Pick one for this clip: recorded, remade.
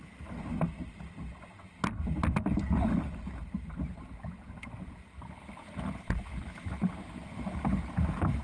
recorded